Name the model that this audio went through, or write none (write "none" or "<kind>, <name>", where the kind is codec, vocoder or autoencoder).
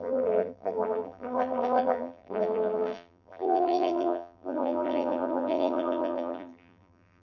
vocoder, BigVGAN v2